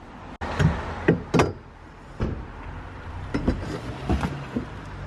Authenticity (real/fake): real